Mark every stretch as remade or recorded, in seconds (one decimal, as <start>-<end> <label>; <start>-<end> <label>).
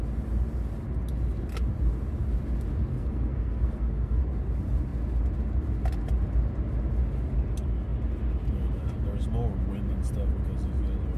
0.0-2.9 recorded; 2.9-4.2 remade; 4.2-11.2 recorded